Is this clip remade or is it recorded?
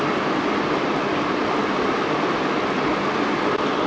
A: recorded